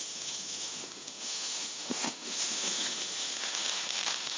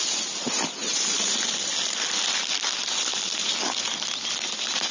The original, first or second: second